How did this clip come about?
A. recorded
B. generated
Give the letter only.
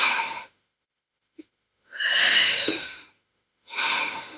B